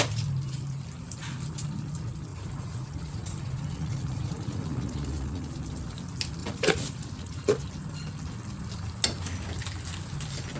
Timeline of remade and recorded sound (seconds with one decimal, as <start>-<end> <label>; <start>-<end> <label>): 0.0-2.3 recorded; 2.3-5.5 remade; 5.5-6.4 recorded; 6.4-7.7 remade; 7.7-10.6 recorded